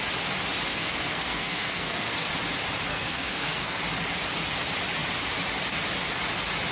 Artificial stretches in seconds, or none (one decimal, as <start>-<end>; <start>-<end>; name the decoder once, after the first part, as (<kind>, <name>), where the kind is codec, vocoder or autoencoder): 0.7-2.3 (codec, SNAC); 2.9-3.8

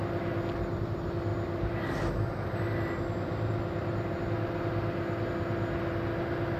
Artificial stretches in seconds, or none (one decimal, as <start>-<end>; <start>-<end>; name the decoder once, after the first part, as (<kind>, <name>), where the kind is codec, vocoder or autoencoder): none

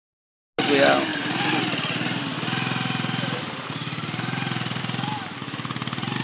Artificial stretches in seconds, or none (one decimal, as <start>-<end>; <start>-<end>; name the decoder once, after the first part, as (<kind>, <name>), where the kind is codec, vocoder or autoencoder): none

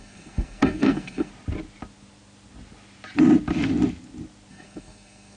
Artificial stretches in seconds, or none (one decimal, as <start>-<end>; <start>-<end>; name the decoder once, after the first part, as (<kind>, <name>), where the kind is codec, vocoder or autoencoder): 0.0-1.3 (codec, SNAC); 4.5-5.4

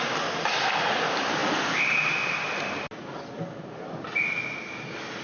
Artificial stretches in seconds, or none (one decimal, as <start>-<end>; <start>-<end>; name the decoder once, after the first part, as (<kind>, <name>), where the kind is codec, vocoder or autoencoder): none

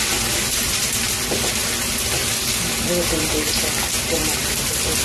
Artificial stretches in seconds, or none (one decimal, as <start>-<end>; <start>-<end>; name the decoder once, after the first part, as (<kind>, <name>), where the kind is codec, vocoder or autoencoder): none

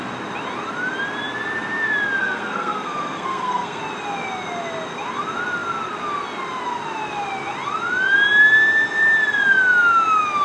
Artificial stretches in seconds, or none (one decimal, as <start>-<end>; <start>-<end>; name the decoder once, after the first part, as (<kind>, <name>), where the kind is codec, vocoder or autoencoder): 2.2-3.8 (codec, SNAC)